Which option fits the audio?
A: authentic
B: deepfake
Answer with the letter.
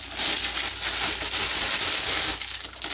A